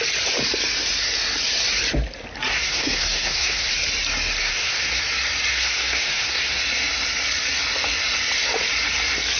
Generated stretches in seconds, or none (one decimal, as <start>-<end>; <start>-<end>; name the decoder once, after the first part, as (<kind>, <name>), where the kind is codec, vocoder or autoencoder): 2.5-3.7 (codec, SNAC); 4.4-5.0; 5.5-6.6